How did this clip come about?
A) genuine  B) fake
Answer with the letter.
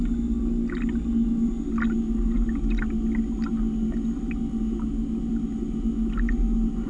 A